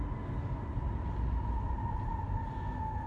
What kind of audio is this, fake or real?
real